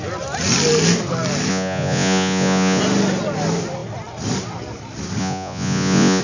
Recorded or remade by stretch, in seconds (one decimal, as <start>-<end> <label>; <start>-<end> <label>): 0.0-1.5 recorded; 1.5-2.8 remade; 2.8-5.2 recorded; 5.2-6.2 remade